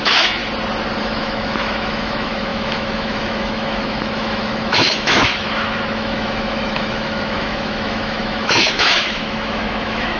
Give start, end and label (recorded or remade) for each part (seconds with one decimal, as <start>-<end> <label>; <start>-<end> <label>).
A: 0.0-0.4 remade; 0.4-1.0 recorded; 1.0-10.2 remade

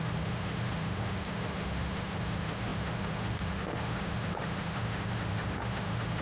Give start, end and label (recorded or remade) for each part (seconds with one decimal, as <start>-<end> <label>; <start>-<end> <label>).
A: 0.0-6.2 remade

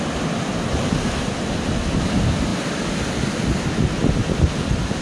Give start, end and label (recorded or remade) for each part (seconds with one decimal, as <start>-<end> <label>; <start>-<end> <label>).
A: 0.0-5.0 recorded

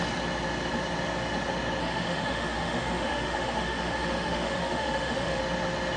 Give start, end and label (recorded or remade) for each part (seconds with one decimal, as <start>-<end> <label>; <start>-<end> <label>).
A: 0.0-1.8 recorded; 1.8-5.4 remade; 5.4-6.0 recorded

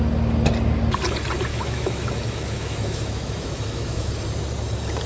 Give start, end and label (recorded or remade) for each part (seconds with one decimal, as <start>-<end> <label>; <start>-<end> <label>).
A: 0.0-1.5 recorded; 1.5-4.1 remade; 4.1-5.1 recorded